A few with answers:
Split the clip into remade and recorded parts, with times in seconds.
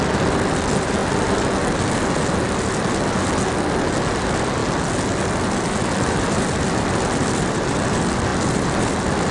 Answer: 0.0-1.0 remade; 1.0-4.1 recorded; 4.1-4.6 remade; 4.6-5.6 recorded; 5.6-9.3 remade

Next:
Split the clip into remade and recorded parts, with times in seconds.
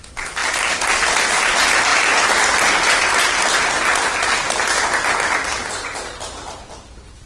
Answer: 0.0-7.3 recorded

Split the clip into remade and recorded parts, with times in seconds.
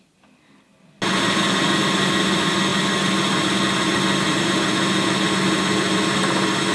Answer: 0.0-6.7 recorded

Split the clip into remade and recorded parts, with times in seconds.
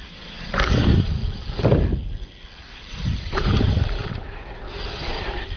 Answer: 0.0-1.2 remade; 1.2-2.6 recorded; 2.6-5.6 remade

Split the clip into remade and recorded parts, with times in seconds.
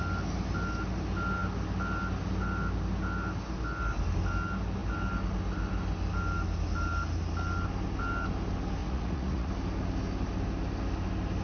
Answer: 0.0-8.8 recorded; 8.8-9.5 remade; 9.5-11.4 recorded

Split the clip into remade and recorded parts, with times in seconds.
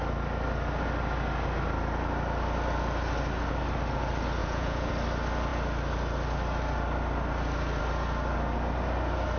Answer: 0.0-4.4 recorded; 4.4-4.9 remade; 4.9-9.4 recorded